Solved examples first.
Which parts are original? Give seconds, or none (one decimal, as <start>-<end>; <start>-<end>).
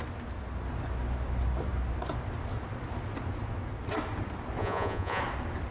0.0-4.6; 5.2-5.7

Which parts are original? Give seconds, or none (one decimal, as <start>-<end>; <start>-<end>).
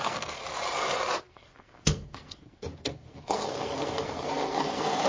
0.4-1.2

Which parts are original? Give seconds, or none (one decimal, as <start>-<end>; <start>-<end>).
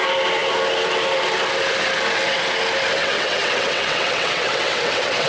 0.0-3.0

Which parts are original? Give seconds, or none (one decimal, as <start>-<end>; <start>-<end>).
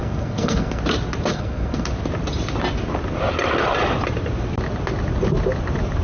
0.8-1.3; 1.9-6.0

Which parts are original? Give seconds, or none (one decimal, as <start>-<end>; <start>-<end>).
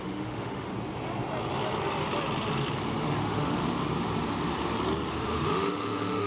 0.7-3.2; 3.6-5.1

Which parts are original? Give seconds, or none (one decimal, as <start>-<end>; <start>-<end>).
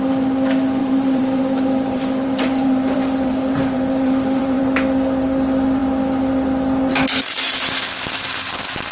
0.0-0.8; 4.6-8.9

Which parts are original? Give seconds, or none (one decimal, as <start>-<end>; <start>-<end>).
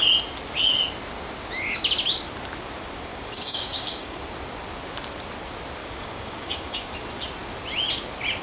0.0-3.1; 4.2-5.8; 6.9-8.4